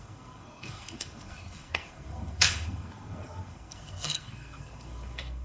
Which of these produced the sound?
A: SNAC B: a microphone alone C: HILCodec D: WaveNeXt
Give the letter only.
A